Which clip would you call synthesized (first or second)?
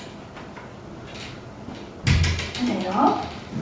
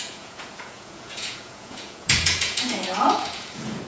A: second